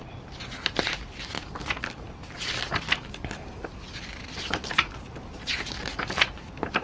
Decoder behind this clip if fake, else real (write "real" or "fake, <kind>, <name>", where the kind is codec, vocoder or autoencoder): real